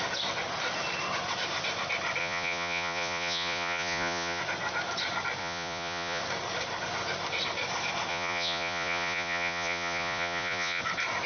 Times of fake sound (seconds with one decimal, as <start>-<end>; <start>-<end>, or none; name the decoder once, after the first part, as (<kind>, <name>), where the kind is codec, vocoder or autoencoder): 2.2-4.4 (vocoder, Vocos); 5.4-6.2; 8.1-10.8